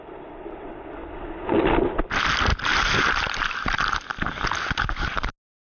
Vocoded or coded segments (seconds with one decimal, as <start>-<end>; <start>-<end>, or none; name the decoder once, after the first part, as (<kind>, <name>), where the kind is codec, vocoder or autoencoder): none